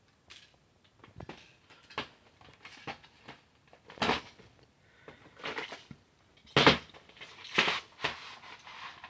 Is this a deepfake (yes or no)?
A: no